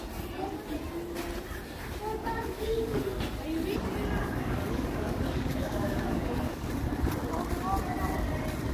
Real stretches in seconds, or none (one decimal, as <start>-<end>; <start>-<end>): 0.0-2.1; 3.0-4.2; 6.7-8.7